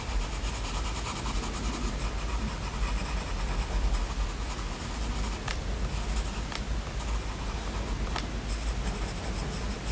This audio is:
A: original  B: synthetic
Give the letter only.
A